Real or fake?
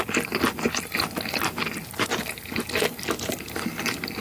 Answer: real